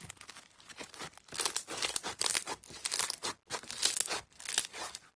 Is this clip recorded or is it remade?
recorded